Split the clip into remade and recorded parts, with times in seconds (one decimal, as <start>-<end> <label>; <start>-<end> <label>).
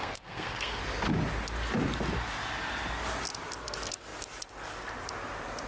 0.0-0.8 remade; 0.8-5.7 recorded